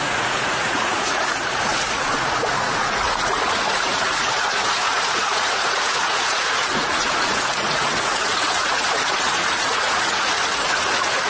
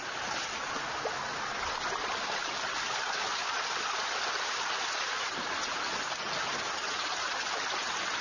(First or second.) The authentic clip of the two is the second